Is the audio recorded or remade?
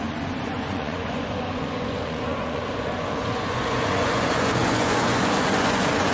remade